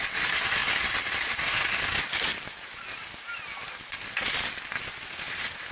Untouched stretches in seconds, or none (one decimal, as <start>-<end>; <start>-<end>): 0.0-5.7